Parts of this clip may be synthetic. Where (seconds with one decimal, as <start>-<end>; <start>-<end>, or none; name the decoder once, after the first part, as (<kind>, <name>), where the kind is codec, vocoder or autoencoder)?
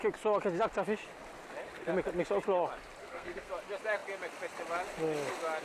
3.0-3.5 (codec, SNAC)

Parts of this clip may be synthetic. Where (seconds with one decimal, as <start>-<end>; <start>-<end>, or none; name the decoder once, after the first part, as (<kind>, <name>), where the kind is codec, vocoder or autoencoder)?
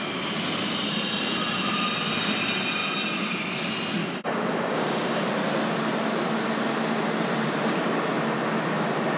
4.0-5.2 (codec, DAC)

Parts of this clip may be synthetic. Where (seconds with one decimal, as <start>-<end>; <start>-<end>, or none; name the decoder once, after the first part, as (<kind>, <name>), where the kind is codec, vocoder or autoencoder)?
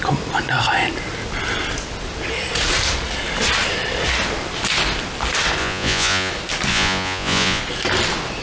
5.6-6.3 (vocoder, Vocos); 6.7-7.6